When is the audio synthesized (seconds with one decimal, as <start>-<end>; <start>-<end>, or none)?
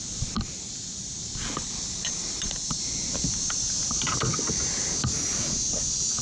2.2-4.3